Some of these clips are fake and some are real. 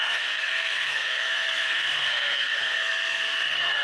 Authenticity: fake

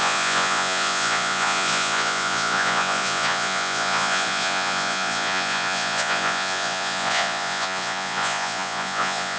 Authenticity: fake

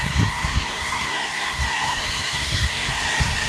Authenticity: fake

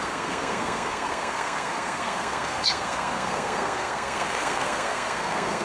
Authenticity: fake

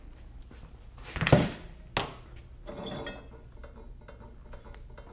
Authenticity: real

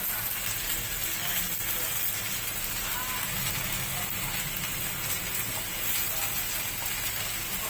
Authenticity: real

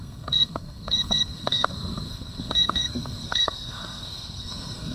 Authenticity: fake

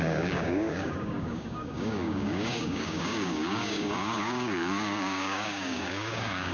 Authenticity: fake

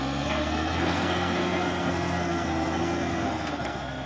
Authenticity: fake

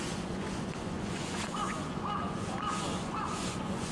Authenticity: fake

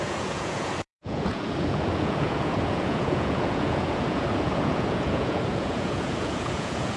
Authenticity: fake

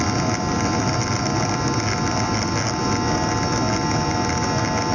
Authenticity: real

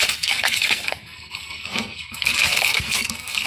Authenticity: fake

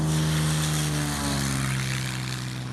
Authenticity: real